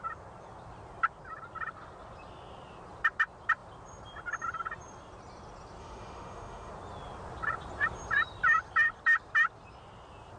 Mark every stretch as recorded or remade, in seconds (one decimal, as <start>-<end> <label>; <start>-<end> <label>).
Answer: 0.0-5.8 recorded; 5.8-6.7 remade; 6.7-10.4 recorded